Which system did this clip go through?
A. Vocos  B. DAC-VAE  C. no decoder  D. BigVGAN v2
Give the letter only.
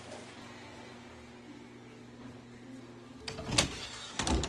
C